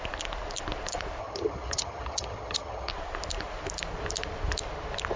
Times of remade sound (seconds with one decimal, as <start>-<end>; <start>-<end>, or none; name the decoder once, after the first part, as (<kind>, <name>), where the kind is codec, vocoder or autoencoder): 1.2-2.9 (vocoder, HiFi-GAN)